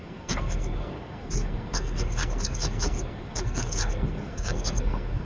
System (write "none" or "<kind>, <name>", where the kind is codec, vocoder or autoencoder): codec, SNAC